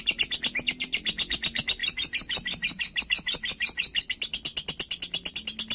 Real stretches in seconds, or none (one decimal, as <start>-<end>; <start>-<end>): 0.0-1.8; 3.0-5.7